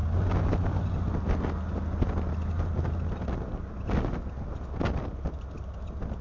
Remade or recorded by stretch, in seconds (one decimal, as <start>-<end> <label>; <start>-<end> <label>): 0.0-6.2 recorded